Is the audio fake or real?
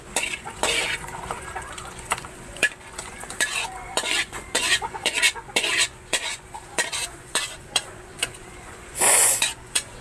fake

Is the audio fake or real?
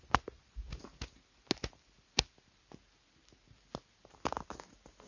real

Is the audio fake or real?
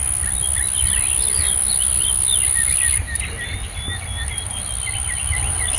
real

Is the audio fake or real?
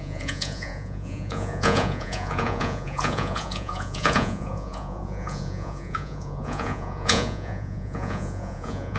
fake